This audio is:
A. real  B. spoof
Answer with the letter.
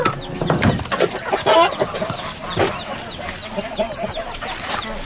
A